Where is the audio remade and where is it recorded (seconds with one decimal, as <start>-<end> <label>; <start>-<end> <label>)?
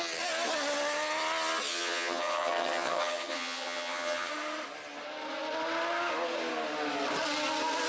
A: 0.0-1.7 recorded; 1.7-4.3 remade; 4.3-7.9 recorded